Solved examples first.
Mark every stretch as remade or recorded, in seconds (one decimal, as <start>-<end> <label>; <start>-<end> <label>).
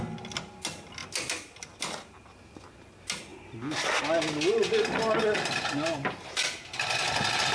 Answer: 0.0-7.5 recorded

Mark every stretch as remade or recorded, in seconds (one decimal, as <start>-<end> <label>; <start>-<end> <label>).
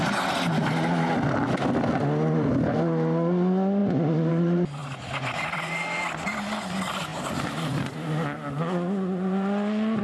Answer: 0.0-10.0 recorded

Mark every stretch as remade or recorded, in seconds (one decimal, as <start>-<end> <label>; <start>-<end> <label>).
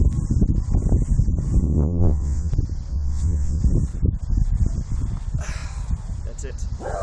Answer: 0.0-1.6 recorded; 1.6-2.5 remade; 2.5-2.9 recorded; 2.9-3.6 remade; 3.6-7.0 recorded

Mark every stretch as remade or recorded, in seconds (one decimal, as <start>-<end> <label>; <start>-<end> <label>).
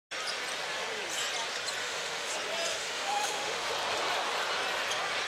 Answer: 0.0-1.8 recorded; 1.8-2.3 remade; 2.3-2.7 recorded; 2.7-3.7 remade; 3.7-5.3 recorded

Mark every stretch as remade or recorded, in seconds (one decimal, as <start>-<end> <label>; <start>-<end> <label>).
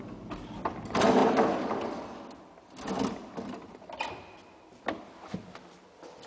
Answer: 0.0-6.3 recorded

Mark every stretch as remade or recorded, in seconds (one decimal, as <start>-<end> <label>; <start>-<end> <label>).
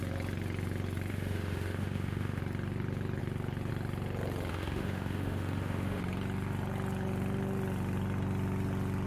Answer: 0.0-1.1 recorded; 1.1-2.4 remade; 2.4-4.5 recorded; 4.5-6.0 remade; 6.0-9.1 recorded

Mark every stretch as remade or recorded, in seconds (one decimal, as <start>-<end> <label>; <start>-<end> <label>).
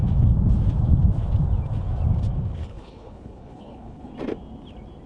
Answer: 0.0-2.6 recorded; 2.6-4.1 remade; 4.1-5.1 recorded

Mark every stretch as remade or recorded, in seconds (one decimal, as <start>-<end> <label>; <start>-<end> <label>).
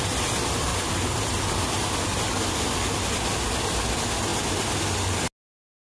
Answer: 0.0-0.7 recorded; 0.7-2.6 remade; 2.6-5.8 recorded